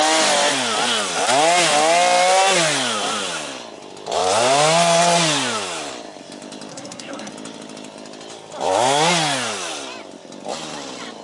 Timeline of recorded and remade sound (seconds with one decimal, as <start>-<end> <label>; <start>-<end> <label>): 0.0-6.7 recorded; 6.7-7.3 remade; 7.3-11.2 recorded